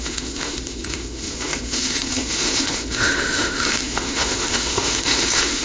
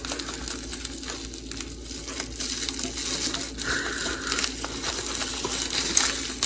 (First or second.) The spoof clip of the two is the first